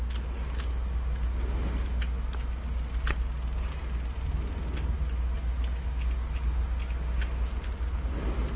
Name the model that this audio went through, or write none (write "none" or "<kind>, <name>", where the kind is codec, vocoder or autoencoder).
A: none